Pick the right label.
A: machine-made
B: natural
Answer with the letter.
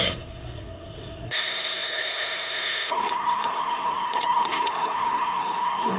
A